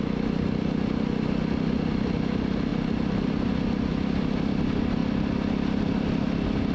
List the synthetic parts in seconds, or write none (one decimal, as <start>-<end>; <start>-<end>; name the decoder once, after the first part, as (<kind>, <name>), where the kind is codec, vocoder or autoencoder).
none